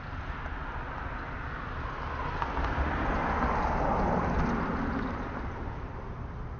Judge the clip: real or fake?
real